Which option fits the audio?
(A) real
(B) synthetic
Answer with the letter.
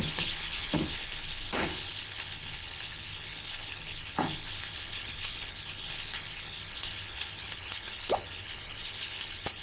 B